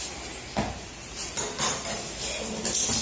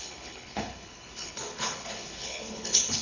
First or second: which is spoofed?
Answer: second